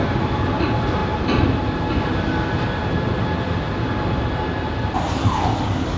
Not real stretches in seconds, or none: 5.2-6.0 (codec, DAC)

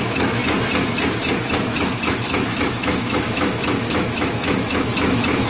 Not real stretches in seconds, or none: 0.0-0.4 (autoencoder, DAC-VAE); 1.4-5.5

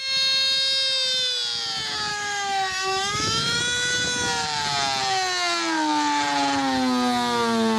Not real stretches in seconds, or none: 2.1-3.6 (autoencoder, DAC-VAE)